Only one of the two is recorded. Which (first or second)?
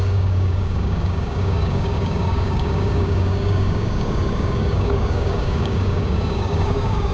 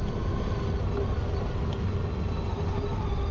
second